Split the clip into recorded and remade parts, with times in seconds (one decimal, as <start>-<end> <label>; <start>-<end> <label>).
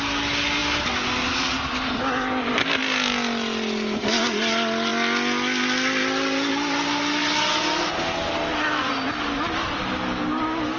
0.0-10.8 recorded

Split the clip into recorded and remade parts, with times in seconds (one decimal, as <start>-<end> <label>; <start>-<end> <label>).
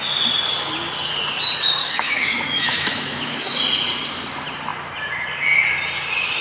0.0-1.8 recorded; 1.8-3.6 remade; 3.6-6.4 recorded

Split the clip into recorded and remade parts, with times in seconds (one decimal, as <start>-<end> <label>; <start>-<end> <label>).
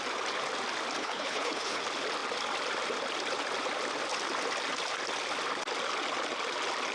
0.0-1.0 recorded; 1.0-1.8 remade; 1.8-6.9 recorded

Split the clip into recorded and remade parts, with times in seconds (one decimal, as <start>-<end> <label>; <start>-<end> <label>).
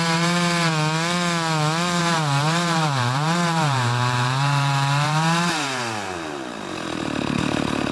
0.0-0.7 remade; 0.7-2.0 recorded; 2.0-7.9 remade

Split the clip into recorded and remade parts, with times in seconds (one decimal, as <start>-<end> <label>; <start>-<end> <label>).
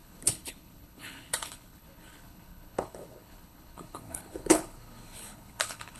0.0-6.0 remade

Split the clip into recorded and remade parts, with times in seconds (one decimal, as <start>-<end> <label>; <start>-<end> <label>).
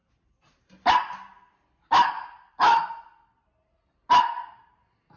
0.0-5.2 recorded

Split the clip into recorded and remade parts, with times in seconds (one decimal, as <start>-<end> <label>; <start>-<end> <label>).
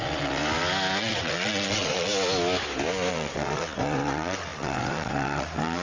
0.0-0.4 remade; 0.4-1.0 recorded; 1.0-2.1 remade; 2.1-3.1 recorded; 3.1-5.8 remade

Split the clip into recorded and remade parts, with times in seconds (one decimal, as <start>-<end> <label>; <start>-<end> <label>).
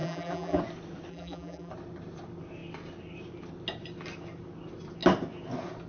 0.0-0.6 remade; 0.6-1.1 recorded; 1.1-1.7 remade; 1.7-5.9 recorded